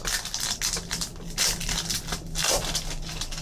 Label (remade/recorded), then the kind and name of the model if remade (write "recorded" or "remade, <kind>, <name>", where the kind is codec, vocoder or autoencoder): recorded